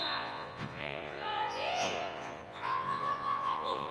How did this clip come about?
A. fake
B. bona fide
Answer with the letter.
A